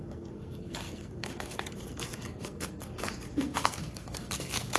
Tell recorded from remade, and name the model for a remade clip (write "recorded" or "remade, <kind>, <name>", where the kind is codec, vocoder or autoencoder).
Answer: remade, codec, SNAC